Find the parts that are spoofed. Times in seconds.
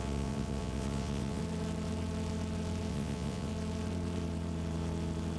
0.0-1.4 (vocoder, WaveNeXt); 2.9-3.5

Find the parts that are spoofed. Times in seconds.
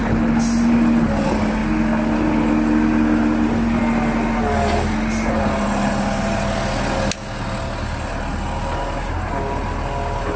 none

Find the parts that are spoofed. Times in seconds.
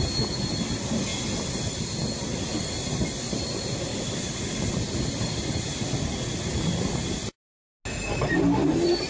2.5-3.2 (vocoder, BigVGAN v2)